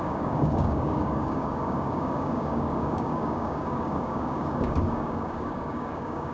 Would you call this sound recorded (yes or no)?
no